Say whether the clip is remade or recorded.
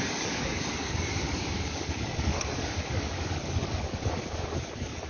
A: remade